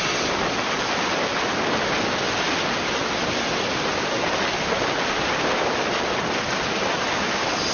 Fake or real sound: real